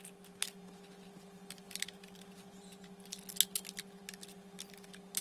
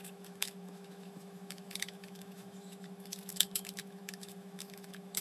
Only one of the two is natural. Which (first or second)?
first